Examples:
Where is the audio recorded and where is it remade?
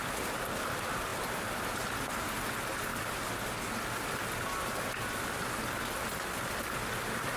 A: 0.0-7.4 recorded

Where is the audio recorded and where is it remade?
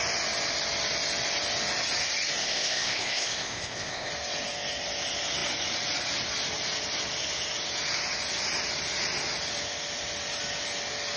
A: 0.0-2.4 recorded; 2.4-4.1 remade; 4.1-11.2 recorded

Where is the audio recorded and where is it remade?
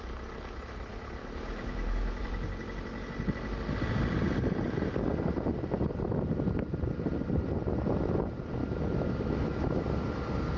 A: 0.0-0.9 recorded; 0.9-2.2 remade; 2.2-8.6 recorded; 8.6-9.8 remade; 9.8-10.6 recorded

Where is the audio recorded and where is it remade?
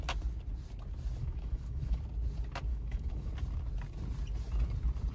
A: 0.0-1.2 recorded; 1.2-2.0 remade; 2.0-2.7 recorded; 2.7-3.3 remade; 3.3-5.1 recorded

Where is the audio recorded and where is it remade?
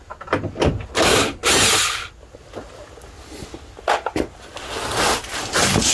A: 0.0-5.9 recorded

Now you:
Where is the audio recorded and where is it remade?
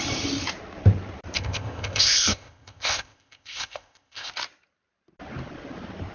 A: 0.0-1.4 recorded; 1.4-4.3 remade; 4.3-6.1 recorded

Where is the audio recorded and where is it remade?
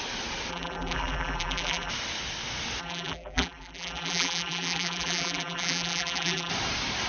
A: 0.0-0.5 recorded; 0.5-1.9 remade; 1.9-2.8 recorded; 2.8-6.5 remade; 6.5-7.1 recorded